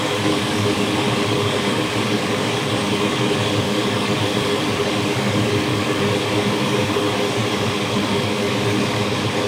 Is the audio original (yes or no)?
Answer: no